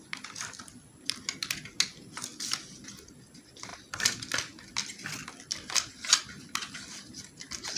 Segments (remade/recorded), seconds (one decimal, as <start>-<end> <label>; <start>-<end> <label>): 0.0-7.8 recorded